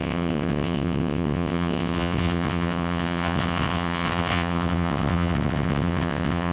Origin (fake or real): fake